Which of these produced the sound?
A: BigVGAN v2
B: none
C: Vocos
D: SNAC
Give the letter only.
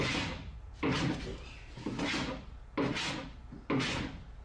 B